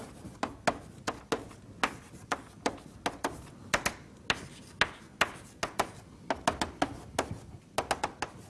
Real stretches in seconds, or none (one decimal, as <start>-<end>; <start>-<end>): 0.0-8.5